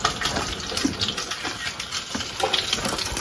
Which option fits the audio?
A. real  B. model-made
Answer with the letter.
A